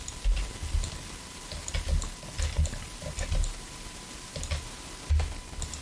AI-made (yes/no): no